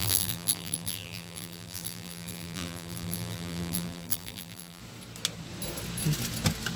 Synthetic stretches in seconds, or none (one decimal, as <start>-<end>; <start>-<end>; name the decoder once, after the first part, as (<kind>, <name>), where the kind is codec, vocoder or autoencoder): 0.0-4.8 (vocoder, BigVGAN v2)